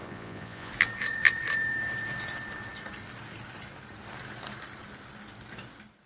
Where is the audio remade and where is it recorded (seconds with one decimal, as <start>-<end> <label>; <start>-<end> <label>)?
0.0-0.7 remade; 0.7-6.1 recorded